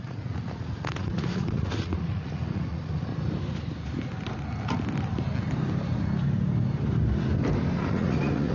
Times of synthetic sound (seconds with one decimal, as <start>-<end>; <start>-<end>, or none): 0.0-3.1; 7.8-8.5